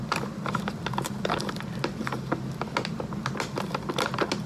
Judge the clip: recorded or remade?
recorded